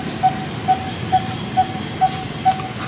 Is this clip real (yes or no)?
yes